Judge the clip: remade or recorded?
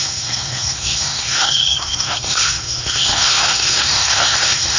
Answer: remade